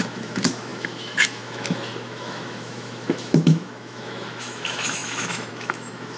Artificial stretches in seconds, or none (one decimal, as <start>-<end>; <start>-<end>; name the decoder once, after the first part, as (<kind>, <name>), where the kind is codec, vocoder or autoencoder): 0.0-6.2 (autoencoder, DAC-VAE)

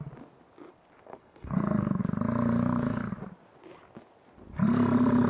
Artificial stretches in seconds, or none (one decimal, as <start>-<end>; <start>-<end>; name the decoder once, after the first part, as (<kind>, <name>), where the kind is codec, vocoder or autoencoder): 1.1-2.0 (codec, SNAC)

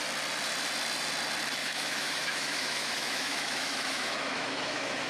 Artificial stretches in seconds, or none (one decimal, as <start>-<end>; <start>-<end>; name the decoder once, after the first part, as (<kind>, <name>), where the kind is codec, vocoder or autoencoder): 1.6-5.1 (autoencoder, DAC-VAE)

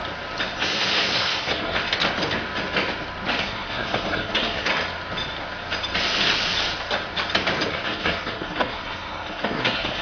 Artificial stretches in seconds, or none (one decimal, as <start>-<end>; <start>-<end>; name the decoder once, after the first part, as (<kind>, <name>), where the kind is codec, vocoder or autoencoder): 0.6-1.8 (codec, SNAC); 3.4-4.7; 7.7-10.0

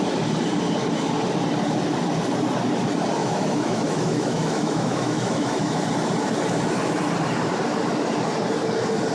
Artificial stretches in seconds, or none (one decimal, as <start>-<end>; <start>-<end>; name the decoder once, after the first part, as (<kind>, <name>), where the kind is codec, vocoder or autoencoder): 3.2-5.8 (autoencoder, DAC-VAE)

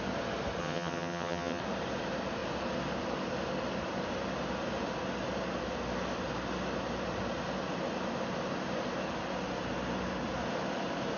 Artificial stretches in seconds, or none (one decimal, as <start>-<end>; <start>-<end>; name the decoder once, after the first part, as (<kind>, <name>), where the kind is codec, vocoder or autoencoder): 0.6-1.6 (vocoder, HiFi-GAN)

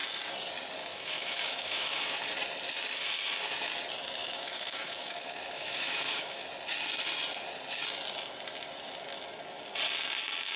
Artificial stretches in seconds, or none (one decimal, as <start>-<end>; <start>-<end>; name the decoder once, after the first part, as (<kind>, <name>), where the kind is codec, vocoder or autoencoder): 0.9-2.2 (autoencoder, DAC-VAE); 4.2-6.5

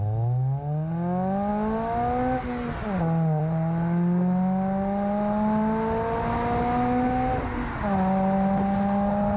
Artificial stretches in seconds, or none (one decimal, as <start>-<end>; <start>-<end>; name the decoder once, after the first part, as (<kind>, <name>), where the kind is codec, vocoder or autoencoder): none